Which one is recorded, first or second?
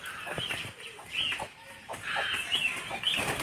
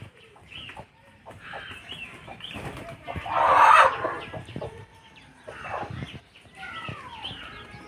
first